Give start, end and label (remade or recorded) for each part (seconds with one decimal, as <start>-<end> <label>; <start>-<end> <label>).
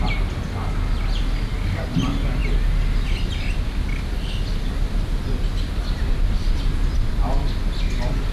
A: 0.0-8.3 recorded